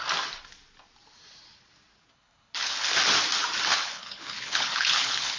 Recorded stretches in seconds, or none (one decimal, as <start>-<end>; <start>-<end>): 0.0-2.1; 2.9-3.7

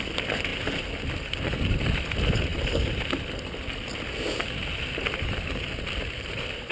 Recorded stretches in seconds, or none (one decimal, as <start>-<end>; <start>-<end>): 0.0-6.7

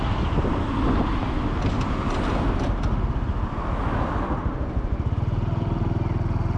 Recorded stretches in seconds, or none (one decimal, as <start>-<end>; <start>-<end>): 0.0-6.6

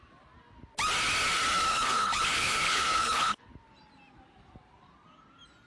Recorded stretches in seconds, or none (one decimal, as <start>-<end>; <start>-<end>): 0.0-1.7; 3.5-5.7